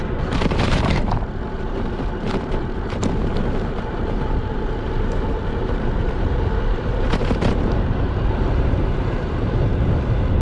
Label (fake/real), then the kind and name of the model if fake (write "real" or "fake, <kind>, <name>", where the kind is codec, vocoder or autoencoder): fake, vocoder, BigVGAN v2